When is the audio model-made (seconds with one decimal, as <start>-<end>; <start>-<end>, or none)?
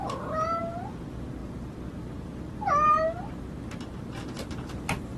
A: 0.0-0.6